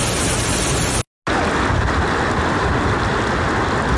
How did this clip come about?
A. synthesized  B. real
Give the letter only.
B